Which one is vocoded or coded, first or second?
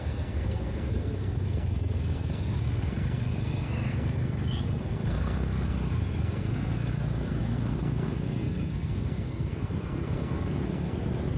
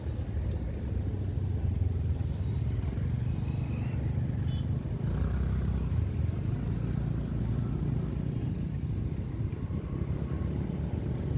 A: first